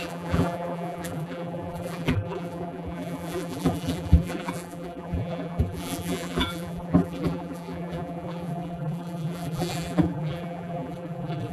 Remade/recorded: remade